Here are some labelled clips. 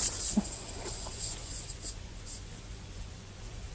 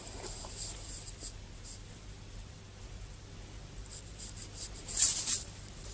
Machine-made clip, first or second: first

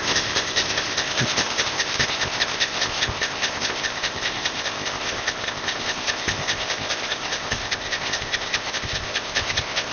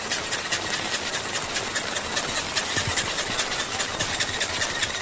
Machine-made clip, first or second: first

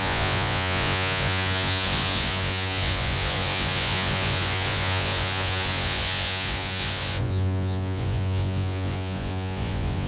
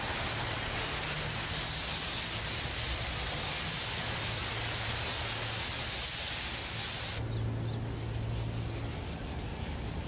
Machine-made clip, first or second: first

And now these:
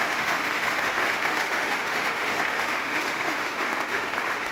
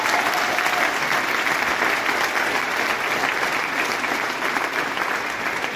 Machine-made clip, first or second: first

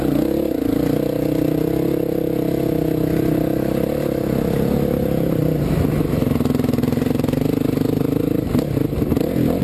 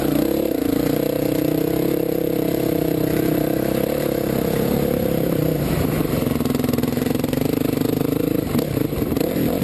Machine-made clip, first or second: second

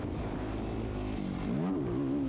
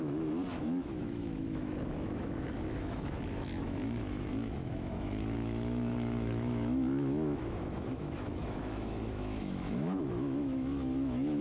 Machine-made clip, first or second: second